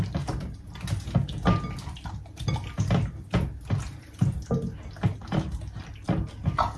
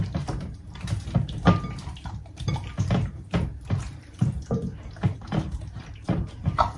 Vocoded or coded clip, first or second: second